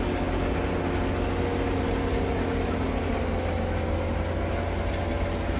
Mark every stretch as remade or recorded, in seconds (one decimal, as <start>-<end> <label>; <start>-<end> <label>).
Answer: 0.0-5.6 recorded